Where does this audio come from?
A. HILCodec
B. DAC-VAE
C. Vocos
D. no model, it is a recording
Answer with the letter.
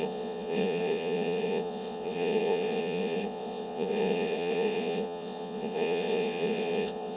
C